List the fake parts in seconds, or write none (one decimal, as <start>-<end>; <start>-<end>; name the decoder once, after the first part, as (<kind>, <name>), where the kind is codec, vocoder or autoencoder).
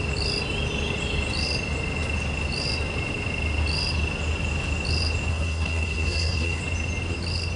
5.3-6.6 (codec, SNAC)